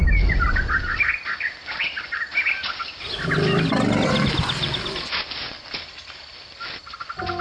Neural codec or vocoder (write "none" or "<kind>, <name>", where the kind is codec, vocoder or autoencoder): none